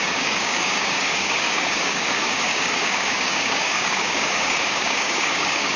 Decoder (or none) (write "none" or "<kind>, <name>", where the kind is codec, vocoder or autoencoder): codec, DAC